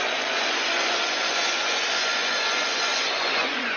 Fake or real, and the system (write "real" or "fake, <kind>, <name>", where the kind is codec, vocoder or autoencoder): fake, vocoder, Vocos